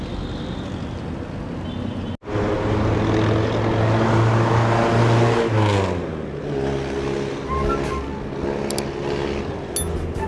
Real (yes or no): yes